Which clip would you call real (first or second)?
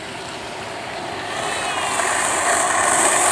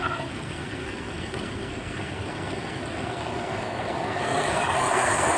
first